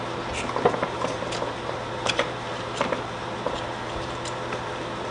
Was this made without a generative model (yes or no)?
no